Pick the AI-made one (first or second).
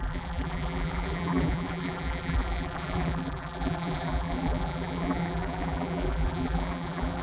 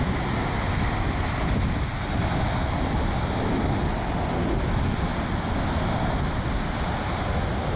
first